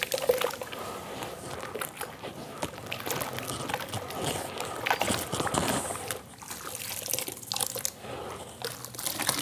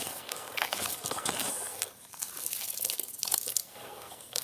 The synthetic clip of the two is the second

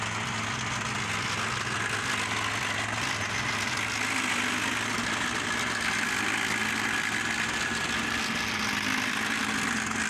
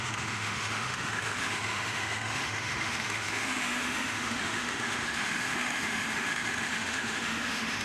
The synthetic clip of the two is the second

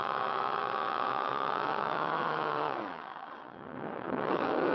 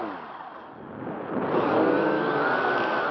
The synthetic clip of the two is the first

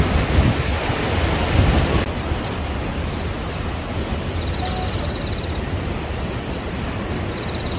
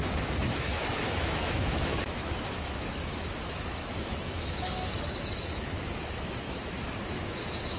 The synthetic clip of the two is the second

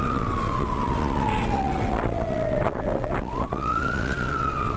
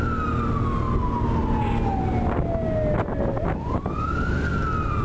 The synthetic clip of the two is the first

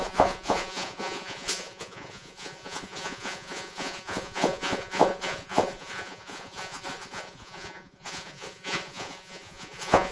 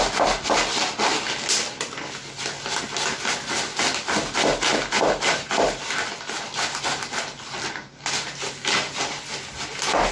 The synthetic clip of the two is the first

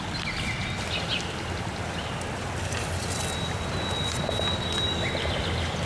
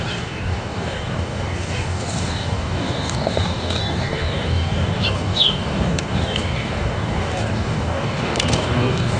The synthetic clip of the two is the second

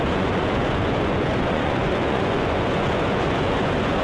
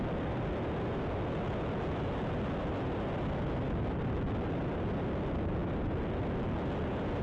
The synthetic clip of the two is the first